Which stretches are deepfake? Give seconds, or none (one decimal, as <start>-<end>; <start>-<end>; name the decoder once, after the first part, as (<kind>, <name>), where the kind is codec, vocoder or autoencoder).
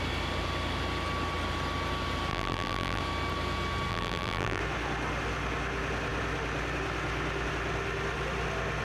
2.3-3.0 (vocoder, BigVGAN v2); 3.9-4.6